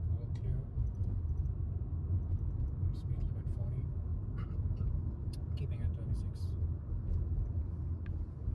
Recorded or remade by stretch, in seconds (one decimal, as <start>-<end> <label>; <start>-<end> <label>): 0.0-8.5 recorded